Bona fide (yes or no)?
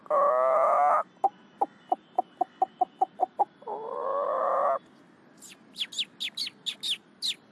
yes